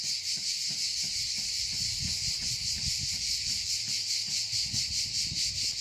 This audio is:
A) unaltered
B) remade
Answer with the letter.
A